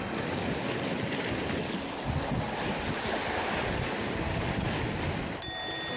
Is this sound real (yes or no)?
yes